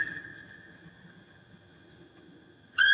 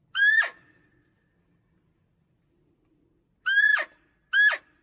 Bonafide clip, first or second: second